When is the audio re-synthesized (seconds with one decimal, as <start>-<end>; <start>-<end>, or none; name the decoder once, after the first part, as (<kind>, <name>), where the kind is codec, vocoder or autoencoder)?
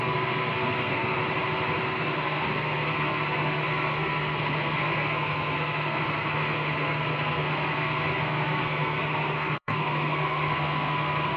0.0-1.2 (codec, SNAC); 1.8-11.4